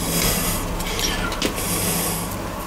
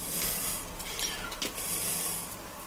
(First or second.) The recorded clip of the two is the first